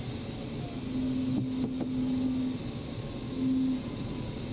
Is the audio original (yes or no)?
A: yes